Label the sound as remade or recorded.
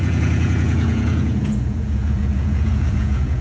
remade